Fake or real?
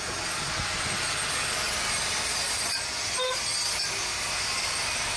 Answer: real